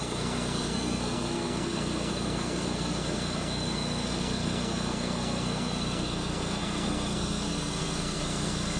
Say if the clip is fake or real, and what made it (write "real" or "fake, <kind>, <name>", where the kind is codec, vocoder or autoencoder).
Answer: fake, codec, SNAC